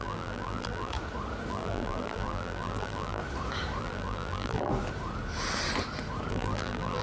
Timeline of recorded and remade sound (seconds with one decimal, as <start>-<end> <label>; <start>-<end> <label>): 0.0-0.9 remade; 0.9-1.5 recorded; 1.5-3.2 remade; 3.2-3.8 recorded; 3.8-4.7 remade; 4.7-6.3 recorded; 6.3-7.0 remade